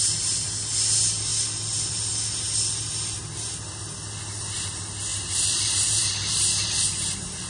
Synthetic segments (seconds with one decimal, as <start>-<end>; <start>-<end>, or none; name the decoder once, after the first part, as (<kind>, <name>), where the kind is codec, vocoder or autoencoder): 5.1-7.5 (vocoder, BigVGAN v2)